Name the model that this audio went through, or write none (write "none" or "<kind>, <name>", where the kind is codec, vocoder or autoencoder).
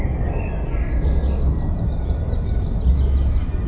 none